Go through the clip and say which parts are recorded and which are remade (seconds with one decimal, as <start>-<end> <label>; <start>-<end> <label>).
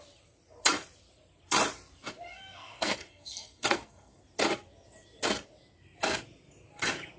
0.0-2.3 recorded; 2.3-4.2 remade; 4.2-7.2 recorded